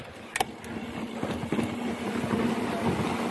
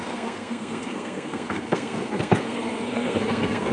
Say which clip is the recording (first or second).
first